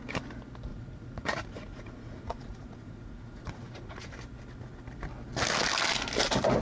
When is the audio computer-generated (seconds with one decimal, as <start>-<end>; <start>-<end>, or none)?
0.7-4.1